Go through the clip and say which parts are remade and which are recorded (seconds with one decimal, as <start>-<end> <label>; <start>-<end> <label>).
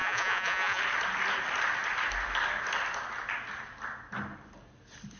0.0-0.8 remade; 0.8-5.2 recorded